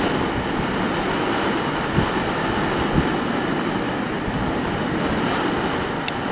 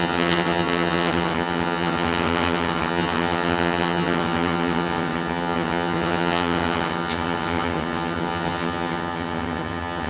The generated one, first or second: second